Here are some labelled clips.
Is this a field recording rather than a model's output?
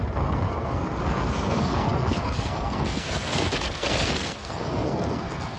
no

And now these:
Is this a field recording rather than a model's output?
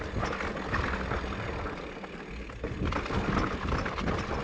yes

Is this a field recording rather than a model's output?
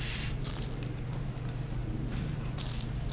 yes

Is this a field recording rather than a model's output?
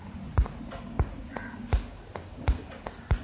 yes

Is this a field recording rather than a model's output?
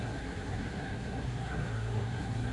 no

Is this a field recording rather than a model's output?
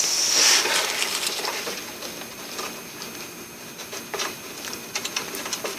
no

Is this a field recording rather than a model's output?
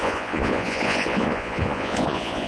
no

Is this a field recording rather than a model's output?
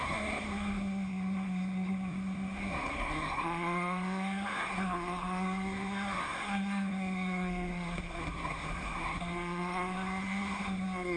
no